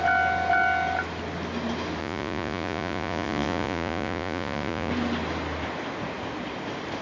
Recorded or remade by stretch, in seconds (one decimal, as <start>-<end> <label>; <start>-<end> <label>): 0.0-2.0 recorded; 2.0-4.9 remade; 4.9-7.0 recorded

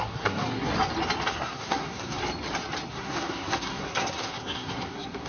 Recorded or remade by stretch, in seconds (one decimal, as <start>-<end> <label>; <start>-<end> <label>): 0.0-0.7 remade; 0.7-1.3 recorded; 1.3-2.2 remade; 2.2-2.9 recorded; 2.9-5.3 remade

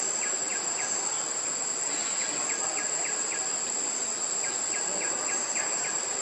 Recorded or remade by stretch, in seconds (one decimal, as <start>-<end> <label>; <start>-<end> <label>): 0.0-6.2 recorded